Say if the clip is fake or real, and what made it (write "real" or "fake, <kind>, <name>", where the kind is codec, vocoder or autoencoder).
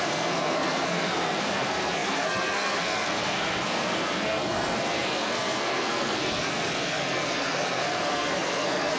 fake, codec, SNAC